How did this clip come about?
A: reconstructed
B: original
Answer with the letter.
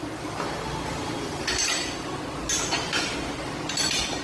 B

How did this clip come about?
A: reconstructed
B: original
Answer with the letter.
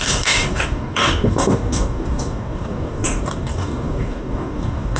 A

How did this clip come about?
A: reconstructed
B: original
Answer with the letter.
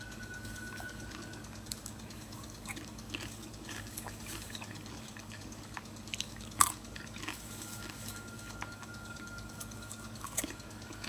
A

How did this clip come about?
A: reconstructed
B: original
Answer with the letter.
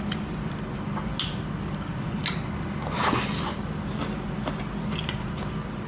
B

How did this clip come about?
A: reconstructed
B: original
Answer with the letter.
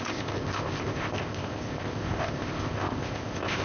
A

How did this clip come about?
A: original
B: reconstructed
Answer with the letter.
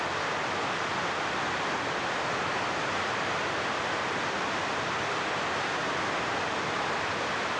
A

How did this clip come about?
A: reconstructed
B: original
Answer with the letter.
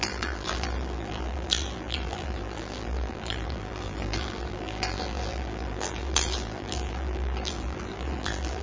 A